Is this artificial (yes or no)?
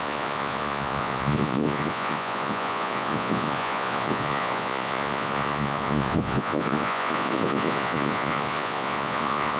yes